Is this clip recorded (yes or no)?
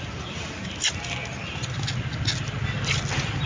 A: yes